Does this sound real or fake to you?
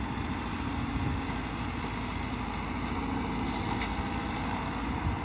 real